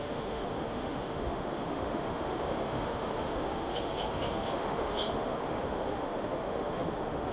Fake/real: fake